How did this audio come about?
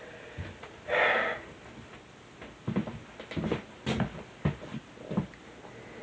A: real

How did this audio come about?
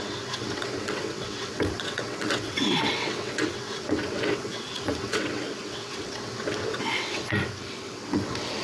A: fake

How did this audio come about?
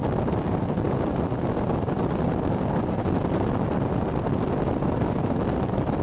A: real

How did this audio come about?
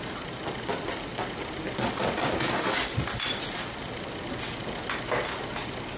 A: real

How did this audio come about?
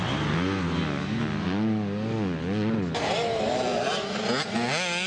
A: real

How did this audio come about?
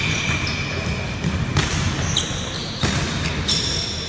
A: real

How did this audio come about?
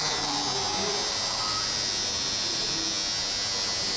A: real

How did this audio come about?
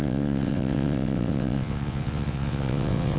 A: fake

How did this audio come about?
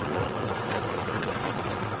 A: fake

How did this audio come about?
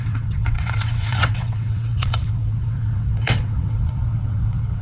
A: fake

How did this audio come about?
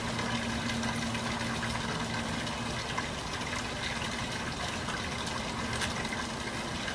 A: real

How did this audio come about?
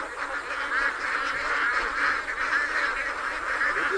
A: real